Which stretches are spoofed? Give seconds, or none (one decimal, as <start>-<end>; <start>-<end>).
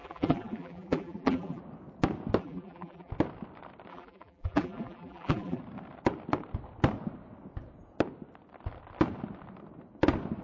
0.0-1.6; 2.4-3.1; 3.9-5.6